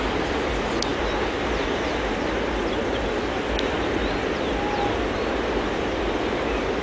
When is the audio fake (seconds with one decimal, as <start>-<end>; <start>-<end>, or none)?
none